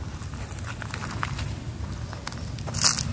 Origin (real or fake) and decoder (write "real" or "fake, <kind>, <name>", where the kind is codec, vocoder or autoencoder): real